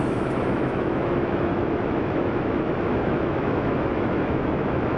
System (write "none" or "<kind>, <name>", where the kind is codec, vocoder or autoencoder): autoencoder, DAC-VAE